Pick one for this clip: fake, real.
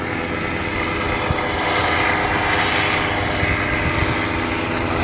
real